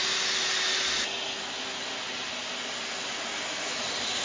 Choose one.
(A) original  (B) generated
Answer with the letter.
A